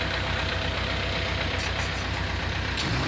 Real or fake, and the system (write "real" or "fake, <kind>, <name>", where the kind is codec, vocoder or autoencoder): real